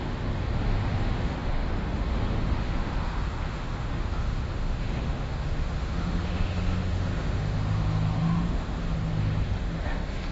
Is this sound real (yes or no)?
no